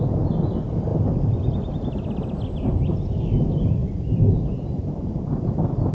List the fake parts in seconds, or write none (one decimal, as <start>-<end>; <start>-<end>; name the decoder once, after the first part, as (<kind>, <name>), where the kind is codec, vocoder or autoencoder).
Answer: 3.8-5.4 (vocoder, BigVGAN v2)